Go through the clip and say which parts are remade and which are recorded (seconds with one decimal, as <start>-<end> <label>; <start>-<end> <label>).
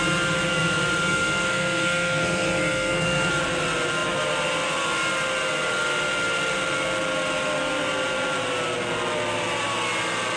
0.0-1.0 recorded; 1.0-3.3 remade; 3.3-10.4 recorded